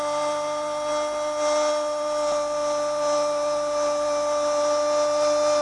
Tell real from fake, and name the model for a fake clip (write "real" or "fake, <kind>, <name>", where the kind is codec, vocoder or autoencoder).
real